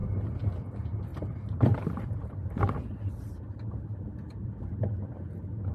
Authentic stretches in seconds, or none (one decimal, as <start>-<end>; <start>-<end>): 0.0-1.1; 4.5-5.7